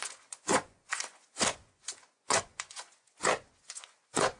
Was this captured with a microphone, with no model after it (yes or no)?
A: no